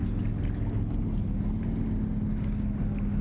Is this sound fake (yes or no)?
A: no